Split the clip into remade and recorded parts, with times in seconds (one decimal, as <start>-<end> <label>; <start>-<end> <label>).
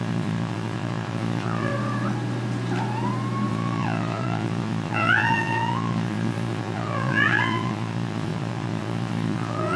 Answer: 0.0-1.7 remade; 1.7-3.5 recorded; 3.5-9.8 remade